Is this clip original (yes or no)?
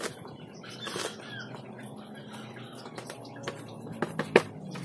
yes